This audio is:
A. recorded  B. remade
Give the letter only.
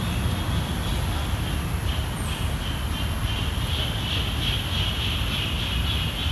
A